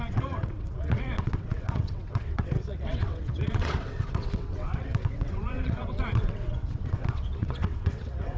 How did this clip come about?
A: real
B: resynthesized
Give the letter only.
B